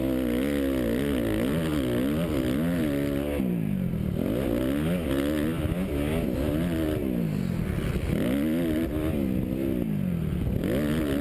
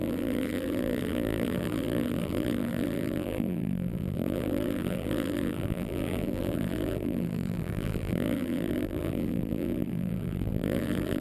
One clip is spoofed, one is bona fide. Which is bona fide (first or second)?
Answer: first